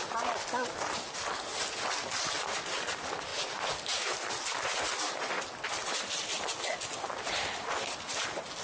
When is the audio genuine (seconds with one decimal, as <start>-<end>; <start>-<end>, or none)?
0.0-8.6